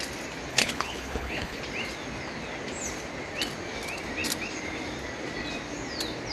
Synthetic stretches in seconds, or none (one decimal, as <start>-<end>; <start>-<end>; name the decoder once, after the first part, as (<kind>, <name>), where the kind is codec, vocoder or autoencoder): 0.5-1.6 (codec, HILCodec)